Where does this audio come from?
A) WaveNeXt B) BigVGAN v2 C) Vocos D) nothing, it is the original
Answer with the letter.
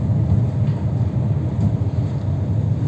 D